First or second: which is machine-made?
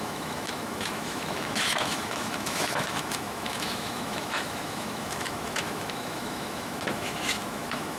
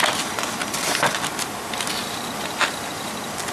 first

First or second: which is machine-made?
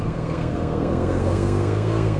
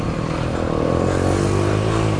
first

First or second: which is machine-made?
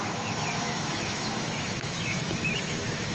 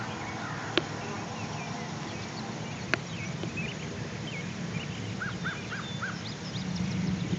first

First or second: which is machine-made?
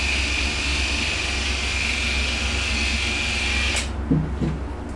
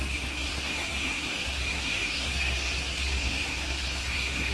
second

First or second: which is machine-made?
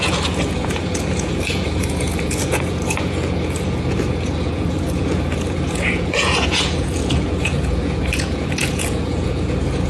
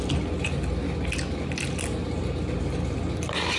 first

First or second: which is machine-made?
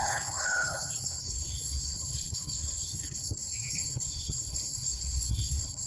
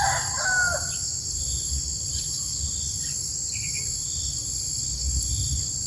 first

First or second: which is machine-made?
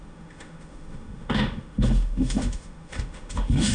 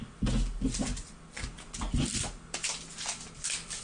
first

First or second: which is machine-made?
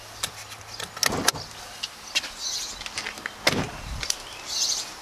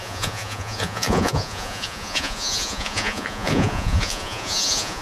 second